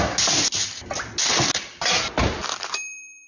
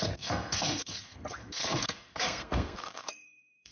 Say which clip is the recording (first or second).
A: first